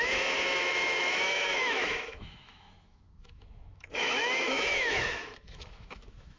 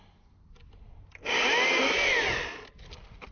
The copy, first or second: first